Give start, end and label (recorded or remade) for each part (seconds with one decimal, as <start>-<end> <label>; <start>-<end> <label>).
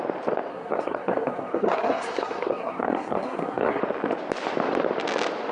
0.0-0.5 recorded; 0.5-3.8 remade; 3.8-5.5 recorded